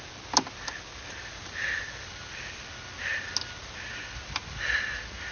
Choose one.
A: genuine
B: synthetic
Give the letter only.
A